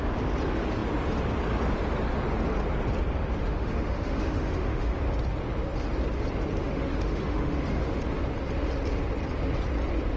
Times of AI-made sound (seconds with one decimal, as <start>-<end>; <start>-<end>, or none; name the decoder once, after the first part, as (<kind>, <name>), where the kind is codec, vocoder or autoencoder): 3.4-5.0 (autoencoder, DAC-VAE); 6.6-8.0